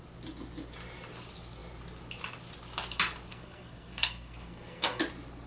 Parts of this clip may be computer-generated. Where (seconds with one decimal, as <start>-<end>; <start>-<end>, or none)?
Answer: 3.3-5.0